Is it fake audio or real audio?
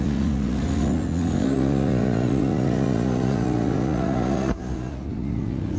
fake